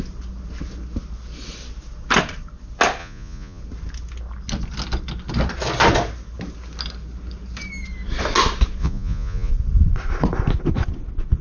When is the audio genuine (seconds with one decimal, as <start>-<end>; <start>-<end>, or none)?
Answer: 0.0-3.0; 3.6-8.8; 9.5-11.4